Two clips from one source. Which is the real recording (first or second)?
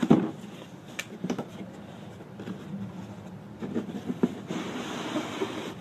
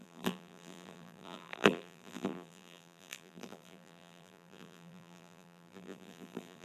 first